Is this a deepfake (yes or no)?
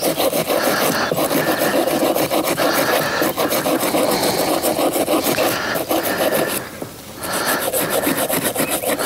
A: no